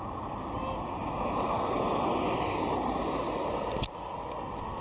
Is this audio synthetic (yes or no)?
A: no